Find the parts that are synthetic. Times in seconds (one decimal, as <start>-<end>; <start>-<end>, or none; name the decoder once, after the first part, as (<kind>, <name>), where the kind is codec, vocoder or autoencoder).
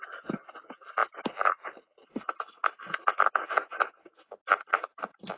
none